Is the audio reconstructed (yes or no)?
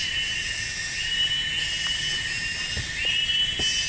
no